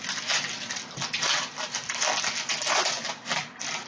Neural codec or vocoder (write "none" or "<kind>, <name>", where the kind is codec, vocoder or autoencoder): none